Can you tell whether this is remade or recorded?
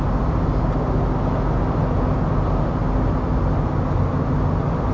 recorded